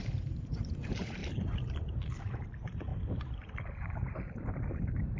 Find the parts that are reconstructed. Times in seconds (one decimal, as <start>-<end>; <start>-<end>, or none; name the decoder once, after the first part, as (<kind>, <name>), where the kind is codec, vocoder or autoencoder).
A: 0.0-1.2 (vocoder, BigVGAN v2); 2.2-2.9; 4.5-5.2